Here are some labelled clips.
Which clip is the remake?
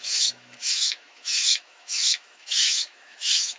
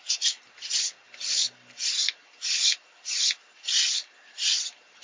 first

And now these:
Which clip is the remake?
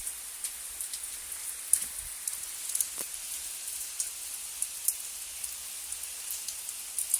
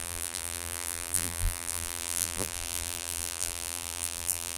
second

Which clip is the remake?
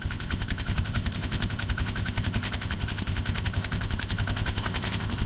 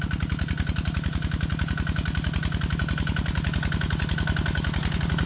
first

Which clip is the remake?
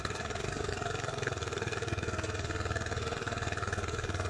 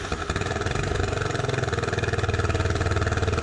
first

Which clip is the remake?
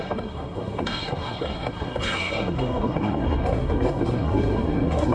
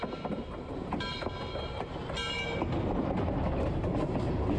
first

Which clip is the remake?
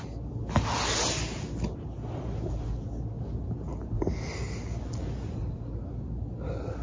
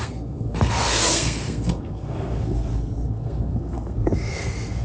second